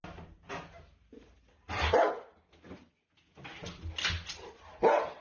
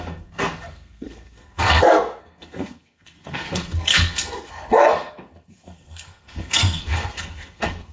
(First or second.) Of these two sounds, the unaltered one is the first